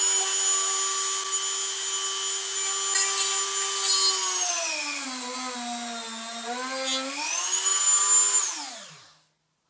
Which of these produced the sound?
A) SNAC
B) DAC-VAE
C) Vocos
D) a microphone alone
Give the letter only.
D